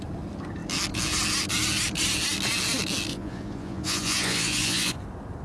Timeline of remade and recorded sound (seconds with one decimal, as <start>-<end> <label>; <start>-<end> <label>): 0.0-3.1 recorded; 3.1-5.0 remade; 5.0-5.4 recorded